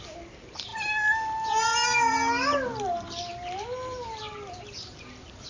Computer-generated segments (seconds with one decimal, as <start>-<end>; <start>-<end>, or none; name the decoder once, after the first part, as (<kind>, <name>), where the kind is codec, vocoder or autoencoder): none